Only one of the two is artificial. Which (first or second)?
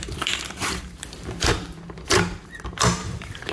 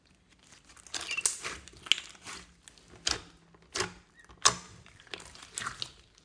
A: first